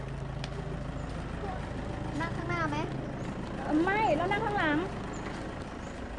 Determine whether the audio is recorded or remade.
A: recorded